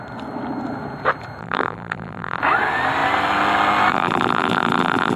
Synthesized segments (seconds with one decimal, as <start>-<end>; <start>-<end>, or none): 1.4-2.4; 3.9-5.2